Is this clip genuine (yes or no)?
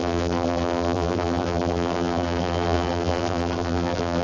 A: no